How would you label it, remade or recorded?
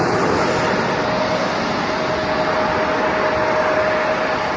recorded